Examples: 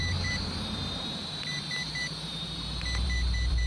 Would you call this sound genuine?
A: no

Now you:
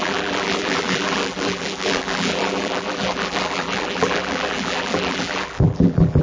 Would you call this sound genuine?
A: no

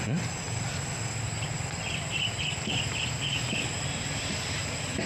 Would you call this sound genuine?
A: yes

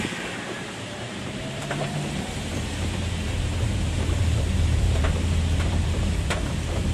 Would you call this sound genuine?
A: no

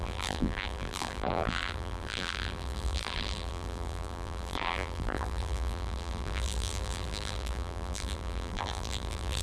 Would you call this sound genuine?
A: no